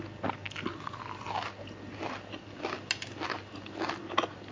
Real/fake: real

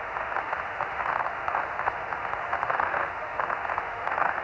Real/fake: fake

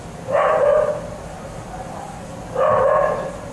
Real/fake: real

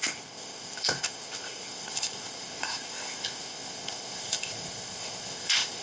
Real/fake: fake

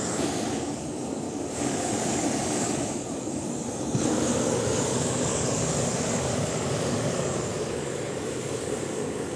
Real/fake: fake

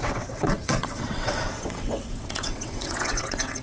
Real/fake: fake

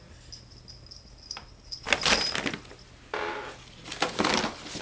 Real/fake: real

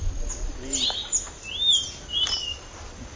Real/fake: real